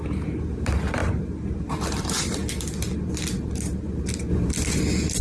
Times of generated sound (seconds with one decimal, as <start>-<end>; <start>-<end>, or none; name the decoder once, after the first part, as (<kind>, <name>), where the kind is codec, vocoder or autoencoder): 0.0-2.4 (vocoder, BigVGAN v2); 3.1-4.3